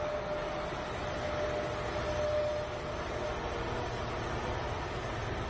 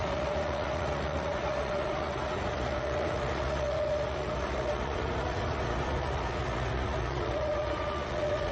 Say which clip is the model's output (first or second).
second